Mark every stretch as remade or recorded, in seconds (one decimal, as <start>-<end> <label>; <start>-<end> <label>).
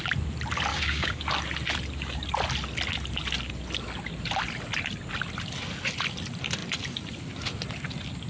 0.0-0.7 recorded; 0.7-1.2 remade; 1.2-8.3 recorded